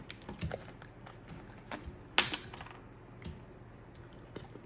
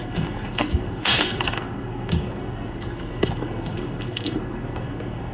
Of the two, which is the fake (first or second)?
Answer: second